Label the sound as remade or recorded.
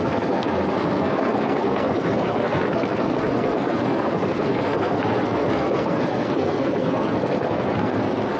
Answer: remade